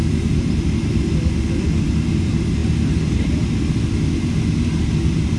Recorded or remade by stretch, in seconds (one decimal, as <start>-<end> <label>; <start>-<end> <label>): 0.0-5.4 recorded